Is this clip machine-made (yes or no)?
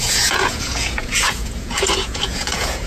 yes